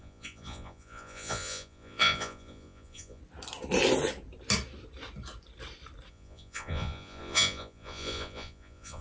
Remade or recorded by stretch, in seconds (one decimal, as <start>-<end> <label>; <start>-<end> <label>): 0.0-3.2 remade; 3.2-6.1 recorded; 6.1-9.0 remade